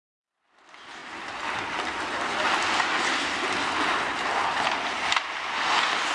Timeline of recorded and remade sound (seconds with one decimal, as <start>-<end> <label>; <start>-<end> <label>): 0.0-6.1 recorded